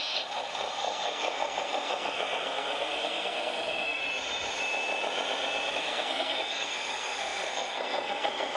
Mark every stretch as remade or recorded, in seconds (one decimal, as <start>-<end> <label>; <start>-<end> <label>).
0.0-4.0 remade; 4.0-5.7 recorded; 5.7-8.6 remade